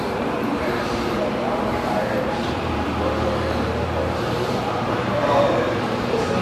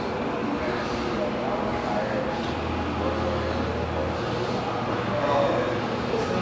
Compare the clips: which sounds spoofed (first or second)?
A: first